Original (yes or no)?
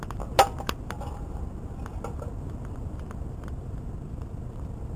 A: yes